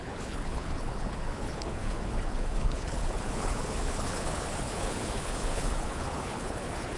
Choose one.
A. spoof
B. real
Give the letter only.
A